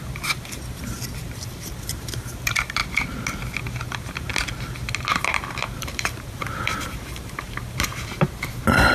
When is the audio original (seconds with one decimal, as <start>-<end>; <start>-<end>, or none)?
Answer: 2.8-3.8; 4.3-5.1